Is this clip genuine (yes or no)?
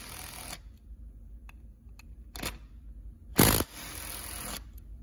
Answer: yes